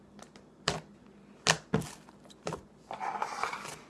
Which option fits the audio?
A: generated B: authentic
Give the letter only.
B